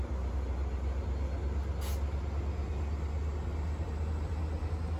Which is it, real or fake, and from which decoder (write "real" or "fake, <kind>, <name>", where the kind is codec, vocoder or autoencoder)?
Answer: real